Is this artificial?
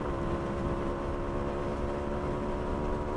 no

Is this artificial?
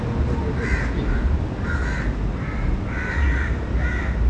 no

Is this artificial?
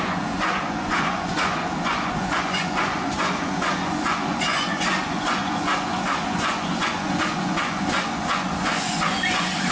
yes